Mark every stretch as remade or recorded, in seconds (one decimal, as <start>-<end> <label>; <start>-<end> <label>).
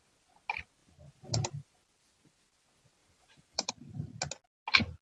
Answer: 0.0-3.0 recorded; 3.0-3.7 remade; 3.7-5.0 recorded